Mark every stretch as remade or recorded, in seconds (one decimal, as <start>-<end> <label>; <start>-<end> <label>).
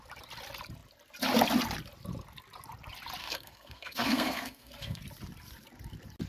0.0-3.2 recorded; 3.2-5.0 remade; 5.0-6.3 recorded